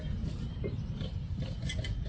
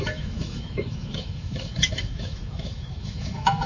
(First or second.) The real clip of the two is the first